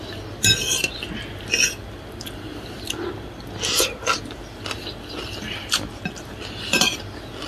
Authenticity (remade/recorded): recorded